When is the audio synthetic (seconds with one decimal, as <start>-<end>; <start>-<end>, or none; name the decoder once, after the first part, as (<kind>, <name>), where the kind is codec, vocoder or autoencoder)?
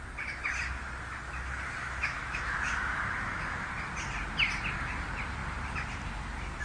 1.8-3.7 (autoencoder, DAC-VAE)